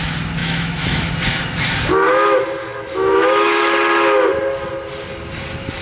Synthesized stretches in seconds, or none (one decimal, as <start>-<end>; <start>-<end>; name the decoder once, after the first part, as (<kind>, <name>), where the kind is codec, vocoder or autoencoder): 0.4-1.1 (autoencoder, DAC-VAE); 2.6-3.6